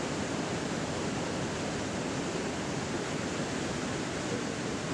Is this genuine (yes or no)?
yes